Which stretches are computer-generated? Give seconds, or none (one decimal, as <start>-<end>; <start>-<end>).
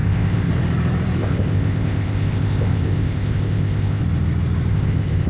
0.0-0.5; 1.2-4.0; 4.7-5.3